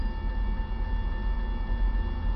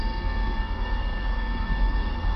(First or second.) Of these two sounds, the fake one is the second